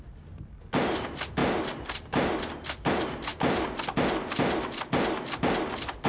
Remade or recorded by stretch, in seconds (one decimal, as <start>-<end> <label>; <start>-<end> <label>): 0.0-6.1 recorded